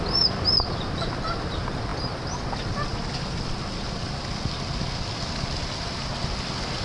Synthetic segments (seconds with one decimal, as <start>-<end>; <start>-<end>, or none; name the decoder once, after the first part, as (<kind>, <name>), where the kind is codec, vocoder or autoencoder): none